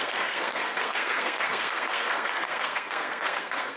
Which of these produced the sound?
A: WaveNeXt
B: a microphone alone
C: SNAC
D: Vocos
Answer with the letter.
C